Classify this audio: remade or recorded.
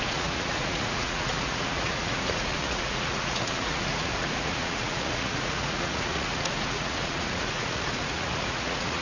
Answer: remade